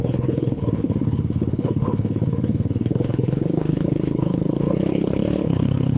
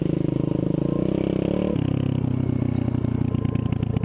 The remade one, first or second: first